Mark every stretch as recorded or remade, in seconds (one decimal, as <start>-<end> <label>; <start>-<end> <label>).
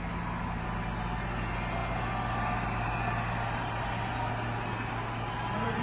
0.0-5.8 recorded